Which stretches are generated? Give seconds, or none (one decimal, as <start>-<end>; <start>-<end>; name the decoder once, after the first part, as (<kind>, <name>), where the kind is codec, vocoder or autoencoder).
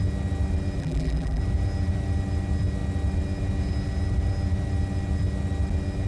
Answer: 0.8-1.4 (vocoder, BigVGAN v2)